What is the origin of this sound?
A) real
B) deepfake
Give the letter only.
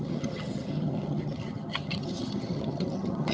B